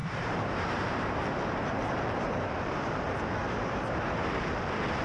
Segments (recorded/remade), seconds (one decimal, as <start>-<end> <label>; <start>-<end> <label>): 0.0-3.0 remade; 3.0-3.4 recorded; 3.4-4.5 remade; 4.5-5.0 recorded